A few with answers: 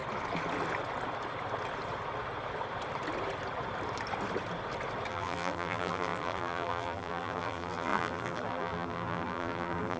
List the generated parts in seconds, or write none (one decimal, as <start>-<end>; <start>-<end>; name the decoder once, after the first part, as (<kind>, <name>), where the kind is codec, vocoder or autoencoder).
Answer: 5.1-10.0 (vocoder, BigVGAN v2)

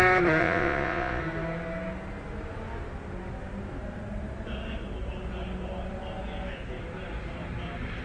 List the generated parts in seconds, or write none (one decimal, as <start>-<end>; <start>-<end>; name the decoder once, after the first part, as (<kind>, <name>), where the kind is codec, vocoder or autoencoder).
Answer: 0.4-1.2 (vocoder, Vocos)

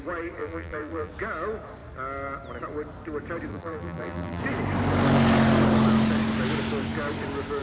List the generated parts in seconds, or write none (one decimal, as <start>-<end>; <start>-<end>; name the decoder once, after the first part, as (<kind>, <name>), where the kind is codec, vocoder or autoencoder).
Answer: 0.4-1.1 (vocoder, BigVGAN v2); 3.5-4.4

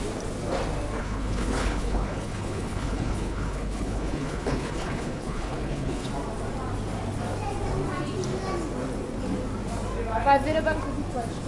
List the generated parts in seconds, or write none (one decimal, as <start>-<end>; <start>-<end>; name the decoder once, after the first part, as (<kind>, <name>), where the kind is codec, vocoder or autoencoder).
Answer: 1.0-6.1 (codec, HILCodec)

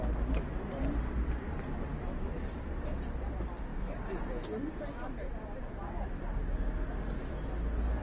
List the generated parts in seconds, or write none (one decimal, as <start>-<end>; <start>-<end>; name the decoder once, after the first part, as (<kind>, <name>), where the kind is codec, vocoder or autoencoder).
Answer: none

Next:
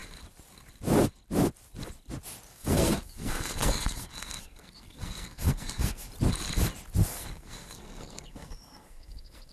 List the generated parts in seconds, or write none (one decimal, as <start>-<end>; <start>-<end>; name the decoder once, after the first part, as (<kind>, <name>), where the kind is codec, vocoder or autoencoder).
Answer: 2.5-6.1 (codec, SNAC); 7.1-9.5

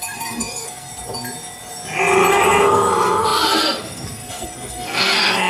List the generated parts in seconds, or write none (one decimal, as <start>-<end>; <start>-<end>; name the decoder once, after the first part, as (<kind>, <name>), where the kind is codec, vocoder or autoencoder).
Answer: 0.0-0.9 (codec, SNAC); 2.3-5.5